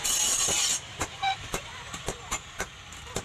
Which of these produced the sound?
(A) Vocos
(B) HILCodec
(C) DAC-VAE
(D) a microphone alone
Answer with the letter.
D